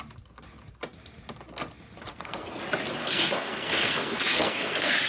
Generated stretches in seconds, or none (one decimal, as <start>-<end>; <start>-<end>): 2.1-2.6; 3.0-5.1